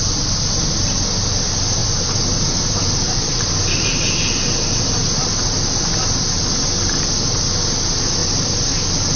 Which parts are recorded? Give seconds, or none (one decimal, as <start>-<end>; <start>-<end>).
0.0-1.8; 6.4-8.2; 8.7-9.2

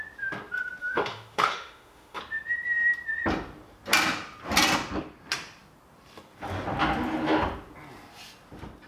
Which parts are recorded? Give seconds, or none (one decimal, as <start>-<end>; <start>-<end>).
0.0-0.8; 2.2-8.9

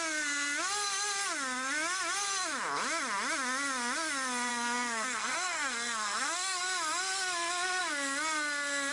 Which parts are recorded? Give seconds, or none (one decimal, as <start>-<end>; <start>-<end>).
0.0-4.5; 6.6-8.9

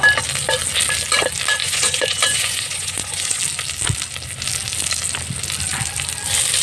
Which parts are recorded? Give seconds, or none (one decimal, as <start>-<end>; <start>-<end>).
0.0-1.6; 3.4-6.6

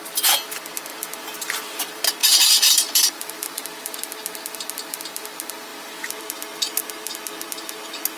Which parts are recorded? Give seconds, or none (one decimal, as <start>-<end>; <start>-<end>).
0.0-2.2; 4.0-8.2